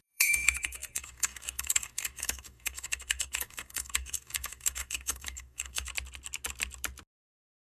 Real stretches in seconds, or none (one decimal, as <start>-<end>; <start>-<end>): 5.9-7.6